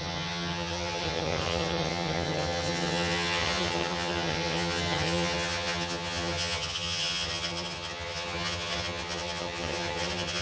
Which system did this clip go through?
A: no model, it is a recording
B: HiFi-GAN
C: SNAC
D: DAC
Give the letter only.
B